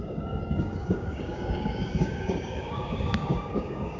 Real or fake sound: fake